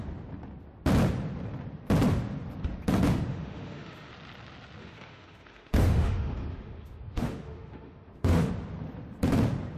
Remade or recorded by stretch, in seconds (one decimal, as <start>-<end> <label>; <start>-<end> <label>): 0.0-3.3 recorded; 3.3-4.1 remade; 4.1-4.8 recorded; 4.8-8.5 remade; 8.5-9.8 recorded